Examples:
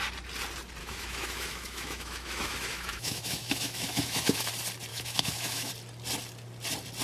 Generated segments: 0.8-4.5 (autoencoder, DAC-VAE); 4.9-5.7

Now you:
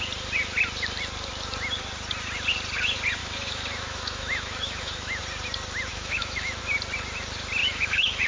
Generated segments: 3.2-5.2 (autoencoder, DAC-VAE); 5.9-6.6; 7.6-8.3

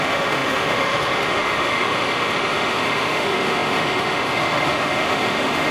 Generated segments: 0.0-5.7 (autoencoder, DAC-VAE)

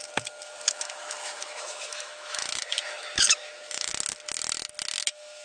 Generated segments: 0.0-3.9 (autoencoder, DAC-VAE); 5.0-5.4

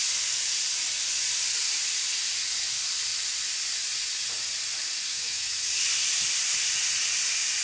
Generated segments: 5.1-5.7 (autoencoder, DAC-VAE)

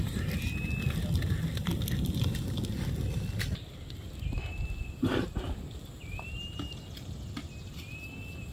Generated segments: none